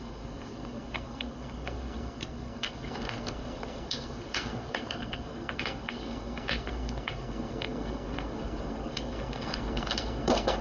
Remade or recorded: remade